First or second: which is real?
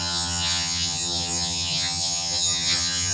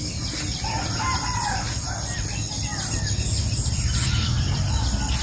second